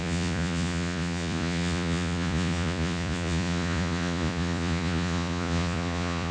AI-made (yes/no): yes